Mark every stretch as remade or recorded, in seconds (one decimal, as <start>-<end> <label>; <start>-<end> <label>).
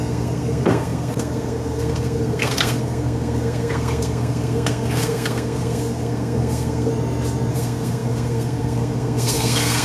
0.0-6.9 remade; 6.9-7.5 recorded; 7.5-9.8 remade